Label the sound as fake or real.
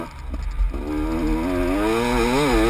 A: real